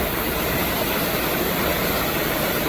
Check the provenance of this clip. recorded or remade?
recorded